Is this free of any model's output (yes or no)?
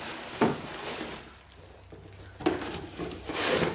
yes